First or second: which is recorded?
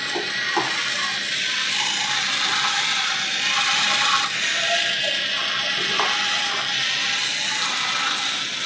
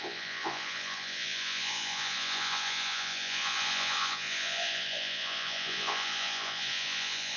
first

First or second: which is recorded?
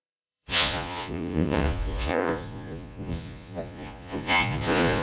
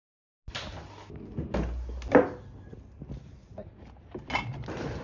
second